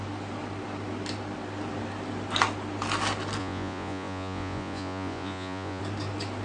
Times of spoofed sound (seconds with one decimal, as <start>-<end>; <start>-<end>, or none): 3.4-5.8